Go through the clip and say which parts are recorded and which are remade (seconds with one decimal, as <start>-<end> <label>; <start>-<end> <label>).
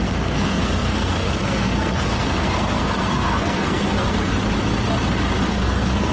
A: 0.0-4.3 remade; 4.3-5.5 recorded; 5.5-6.1 remade